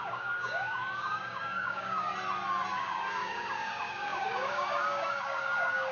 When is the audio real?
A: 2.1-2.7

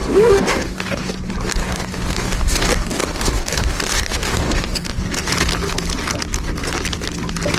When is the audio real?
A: 1.1-1.6; 5.3-7.6

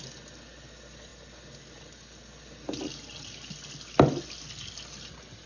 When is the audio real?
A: 0.0-5.5